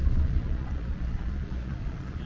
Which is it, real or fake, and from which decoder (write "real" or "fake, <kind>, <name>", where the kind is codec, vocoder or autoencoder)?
fake, vocoder, Vocos